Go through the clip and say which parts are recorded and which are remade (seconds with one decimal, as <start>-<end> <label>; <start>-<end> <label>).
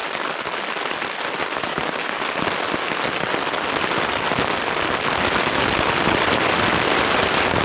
0.0-1.7 recorded; 1.7-2.2 remade; 2.2-7.6 recorded